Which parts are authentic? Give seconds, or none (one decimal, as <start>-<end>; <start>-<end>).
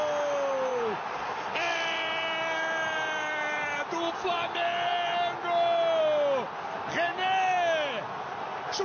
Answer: 0.0-0.7; 4.1-8.8